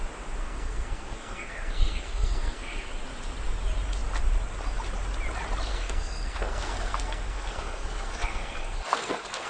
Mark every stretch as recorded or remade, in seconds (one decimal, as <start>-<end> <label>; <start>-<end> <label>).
0.0-0.4 recorded; 0.4-2.9 remade; 2.9-5.7 recorded; 5.7-9.5 remade